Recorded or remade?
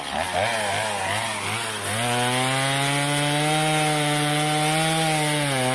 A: recorded